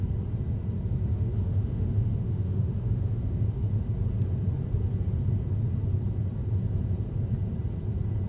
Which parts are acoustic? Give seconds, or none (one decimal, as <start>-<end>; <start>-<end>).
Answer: 0.0-1.1; 3.9-8.3